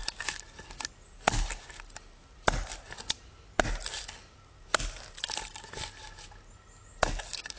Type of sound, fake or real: real